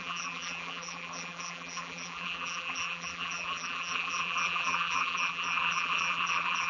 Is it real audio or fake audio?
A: fake